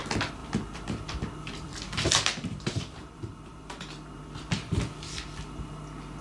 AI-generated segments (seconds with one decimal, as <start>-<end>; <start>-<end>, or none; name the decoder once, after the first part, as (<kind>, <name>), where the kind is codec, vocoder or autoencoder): 0.4-4.1 (vocoder, BigVGAN v2)